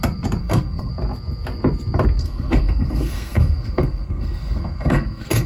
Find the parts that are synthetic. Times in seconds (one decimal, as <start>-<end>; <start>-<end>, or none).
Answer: 0.4-0.9; 2.2-5.5